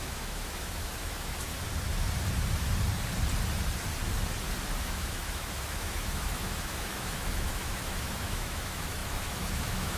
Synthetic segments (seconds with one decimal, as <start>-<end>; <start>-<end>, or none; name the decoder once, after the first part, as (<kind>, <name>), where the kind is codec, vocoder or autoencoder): 0.0-1.5 (autoencoder, DAC-VAE); 4.8-10.0